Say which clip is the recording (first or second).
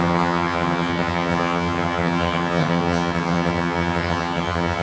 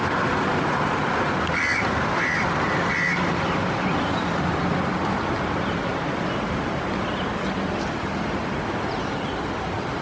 second